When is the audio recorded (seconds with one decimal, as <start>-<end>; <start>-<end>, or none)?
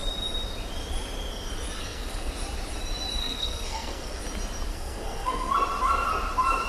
0.0-1.8; 2.3-3.2; 4.2-4.7; 5.5-6.7